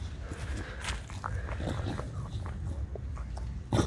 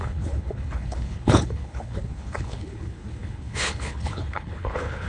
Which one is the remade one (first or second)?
second